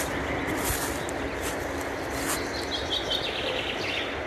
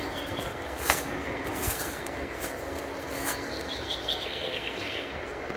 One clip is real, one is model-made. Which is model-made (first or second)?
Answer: second